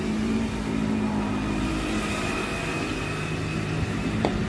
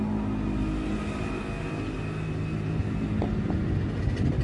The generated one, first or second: first